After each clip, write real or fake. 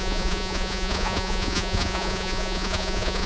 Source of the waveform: fake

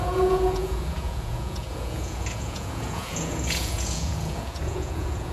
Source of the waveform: fake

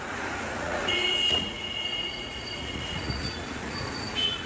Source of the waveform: fake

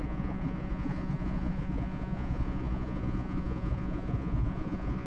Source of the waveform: fake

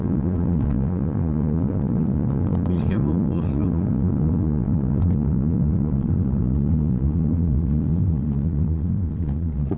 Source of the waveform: fake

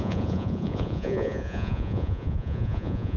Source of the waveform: fake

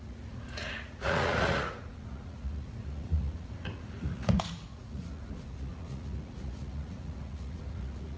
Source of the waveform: fake